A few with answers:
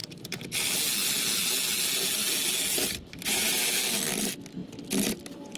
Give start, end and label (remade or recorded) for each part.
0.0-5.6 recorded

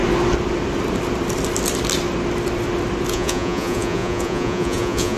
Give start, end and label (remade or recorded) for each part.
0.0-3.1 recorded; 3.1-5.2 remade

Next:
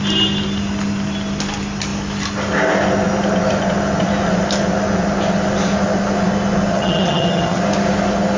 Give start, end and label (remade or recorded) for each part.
0.0-6.7 recorded; 6.7-7.6 remade; 7.6-8.4 recorded